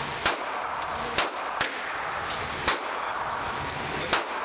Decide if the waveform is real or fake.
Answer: real